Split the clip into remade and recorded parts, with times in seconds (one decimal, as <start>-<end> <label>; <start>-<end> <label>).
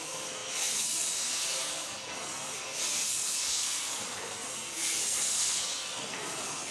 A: 0.0-6.7 remade